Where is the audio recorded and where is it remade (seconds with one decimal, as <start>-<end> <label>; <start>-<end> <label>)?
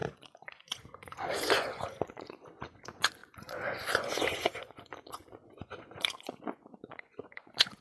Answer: 0.0-7.8 remade